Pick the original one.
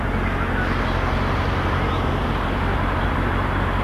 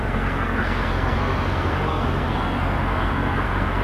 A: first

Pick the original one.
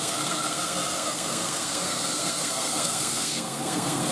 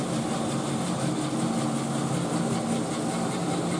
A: second